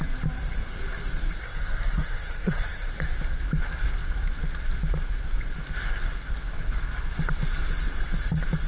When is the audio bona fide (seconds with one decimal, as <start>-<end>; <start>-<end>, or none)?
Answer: 0.0-1.4; 2.9-8.7